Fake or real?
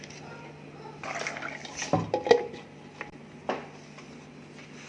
real